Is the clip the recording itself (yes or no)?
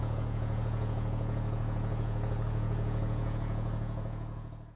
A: no